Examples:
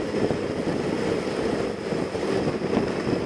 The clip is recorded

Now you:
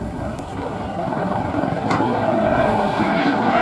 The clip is remade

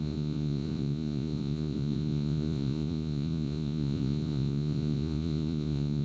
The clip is remade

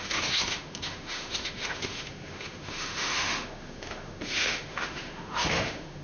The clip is remade